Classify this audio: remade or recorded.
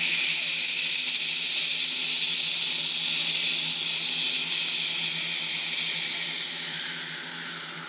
recorded